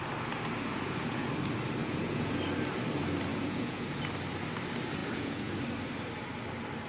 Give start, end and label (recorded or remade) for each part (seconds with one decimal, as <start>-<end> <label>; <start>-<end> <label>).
0.0-0.7 recorded; 0.7-1.3 remade; 1.3-1.8 recorded; 1.8-2.4 remade; 2.4-3.3 recorded; 3.3-4.0 remade; 4.0-5.0 recorded; 5.0-5.6 remade; 5.6-6.9 recorded